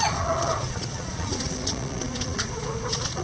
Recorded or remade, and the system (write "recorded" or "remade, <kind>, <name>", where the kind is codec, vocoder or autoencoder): remade, vocoder, Vocos